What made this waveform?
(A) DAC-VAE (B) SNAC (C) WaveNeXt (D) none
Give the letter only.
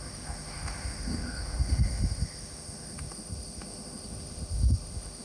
A